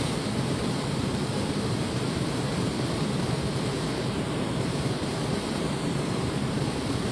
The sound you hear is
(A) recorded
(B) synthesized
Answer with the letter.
B